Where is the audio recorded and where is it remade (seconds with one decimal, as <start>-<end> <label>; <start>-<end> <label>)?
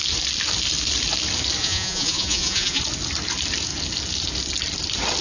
0.0-1.6 recorded; 1.6-2.8 remade; 2.8-5.2 recorded